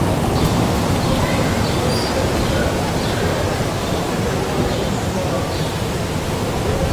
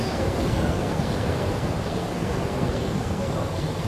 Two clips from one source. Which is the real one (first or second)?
first